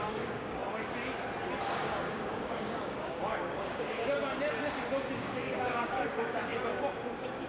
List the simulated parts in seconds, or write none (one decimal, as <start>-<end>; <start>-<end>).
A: 0.0-0.6; 1.7-4.0; 5.2-6.7